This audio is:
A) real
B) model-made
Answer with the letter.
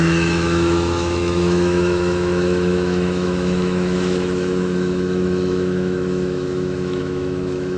B